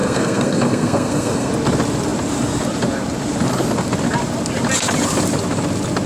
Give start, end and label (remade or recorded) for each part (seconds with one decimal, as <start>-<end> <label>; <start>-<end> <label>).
0.0-1.5 remade; 1.5-6.1 recorded